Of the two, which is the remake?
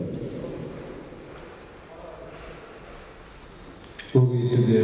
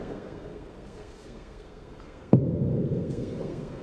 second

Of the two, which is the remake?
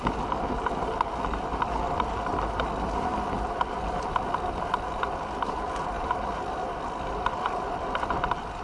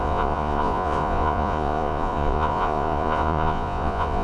second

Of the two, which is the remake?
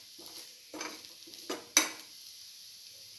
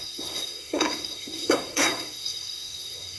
second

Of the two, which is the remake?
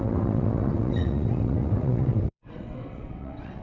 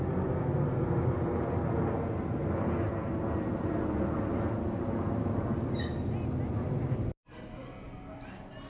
first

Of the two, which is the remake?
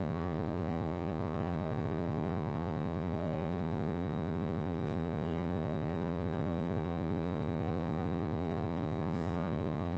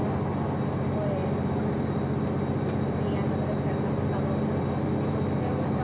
first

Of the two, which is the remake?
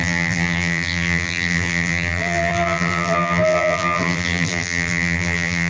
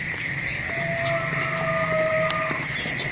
first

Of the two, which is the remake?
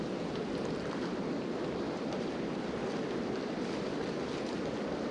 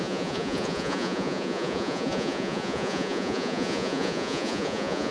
second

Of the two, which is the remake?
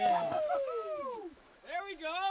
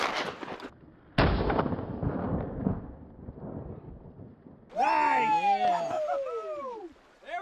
first